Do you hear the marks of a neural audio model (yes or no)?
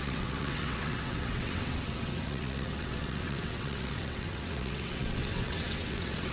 yes